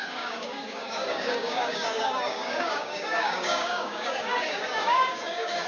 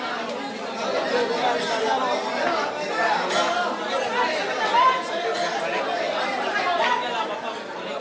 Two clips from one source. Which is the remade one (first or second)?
first